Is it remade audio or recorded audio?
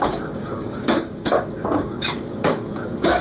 remade